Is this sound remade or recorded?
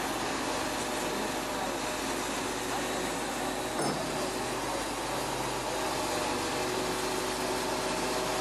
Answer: recorded